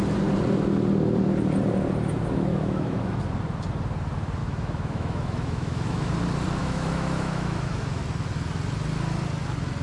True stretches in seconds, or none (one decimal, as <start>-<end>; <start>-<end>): 0.0-2.5; 3.2-4.4; 6.1-6.6; 8.0-9.8